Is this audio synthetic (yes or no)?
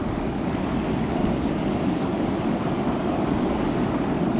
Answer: yes